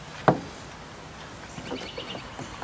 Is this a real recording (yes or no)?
yes